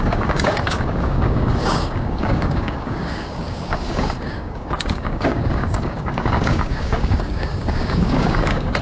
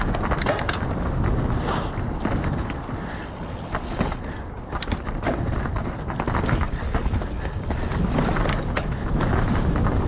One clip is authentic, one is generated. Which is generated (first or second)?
first